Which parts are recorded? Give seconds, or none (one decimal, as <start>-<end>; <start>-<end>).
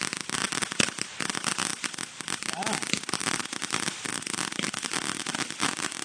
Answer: 0.0-0.4; 1.1-6.0